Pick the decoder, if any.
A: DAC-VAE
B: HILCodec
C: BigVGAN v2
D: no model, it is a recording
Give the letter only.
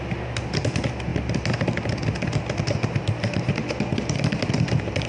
D